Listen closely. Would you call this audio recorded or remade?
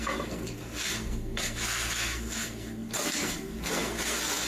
remade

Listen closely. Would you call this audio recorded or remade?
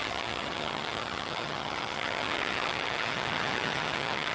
remade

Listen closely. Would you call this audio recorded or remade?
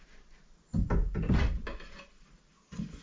recorded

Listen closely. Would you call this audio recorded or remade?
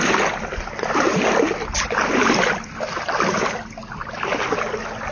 recorded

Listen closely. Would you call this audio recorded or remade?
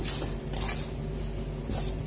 recorded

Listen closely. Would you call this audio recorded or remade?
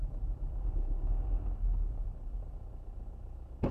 recorded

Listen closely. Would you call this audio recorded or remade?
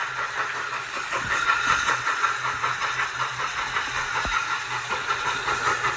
recorded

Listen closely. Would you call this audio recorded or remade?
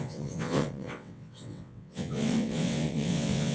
remade